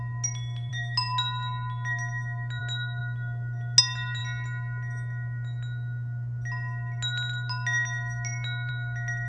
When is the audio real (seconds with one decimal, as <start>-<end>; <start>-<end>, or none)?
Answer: 0.0-9.3